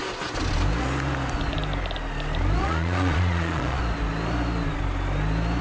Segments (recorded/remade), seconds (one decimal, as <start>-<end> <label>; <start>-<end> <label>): 0.0-2.6 recorded; 2.6-3.8 remade; 3.8-5.6 recorded